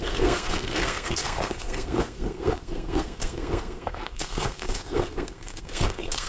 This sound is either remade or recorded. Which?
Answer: remade